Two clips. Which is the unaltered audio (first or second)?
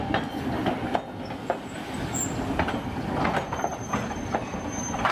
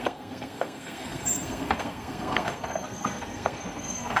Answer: first